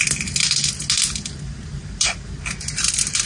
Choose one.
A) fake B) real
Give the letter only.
B